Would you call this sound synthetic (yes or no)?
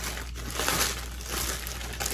no